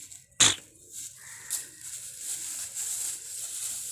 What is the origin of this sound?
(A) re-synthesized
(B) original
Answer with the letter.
B